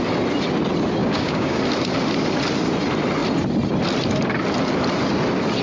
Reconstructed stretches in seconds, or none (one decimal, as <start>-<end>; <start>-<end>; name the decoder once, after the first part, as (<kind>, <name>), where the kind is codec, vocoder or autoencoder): 1.0-1.6 (codec, DAC)